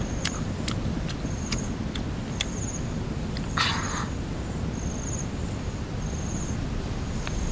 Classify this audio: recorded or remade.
recorded